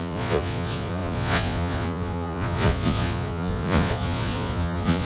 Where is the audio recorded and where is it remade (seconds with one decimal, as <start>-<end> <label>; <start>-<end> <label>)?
0.0-5.0 remade

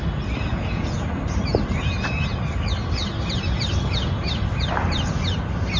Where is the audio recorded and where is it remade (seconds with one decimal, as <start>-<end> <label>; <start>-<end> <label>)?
0.0-0.5 recorded; 0.5-1.1 remade; 1.1-5.8 recorded

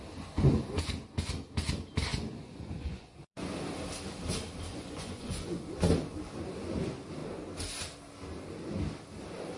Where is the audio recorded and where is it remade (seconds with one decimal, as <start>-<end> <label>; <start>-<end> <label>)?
0.0-2.1 recorded; 2.1-3.5 remade; 3.5-4.7 recorded; 4.7-5.6 remade; 5.6-9.6 recorded

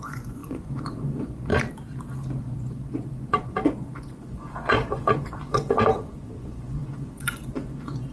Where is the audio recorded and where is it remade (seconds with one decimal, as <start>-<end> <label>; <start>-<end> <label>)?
0.0-1.5 remade; 1.5-2.4 recorded; 2.4-8.1 remade

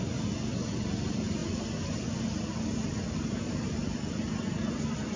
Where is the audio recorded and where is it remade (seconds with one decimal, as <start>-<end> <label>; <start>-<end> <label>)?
0.0-5.2 recorded

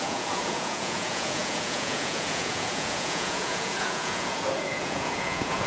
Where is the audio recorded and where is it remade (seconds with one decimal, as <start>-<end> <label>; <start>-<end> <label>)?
0.0-5.7 remade

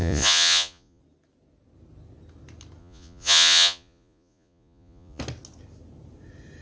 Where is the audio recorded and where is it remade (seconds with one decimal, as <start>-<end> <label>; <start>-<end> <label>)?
0.0-1.0 remade; 1.0-2.8 recorded; 2.8-5.2 remade; 5.2-6.6 recorded